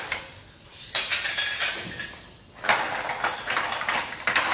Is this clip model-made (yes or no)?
no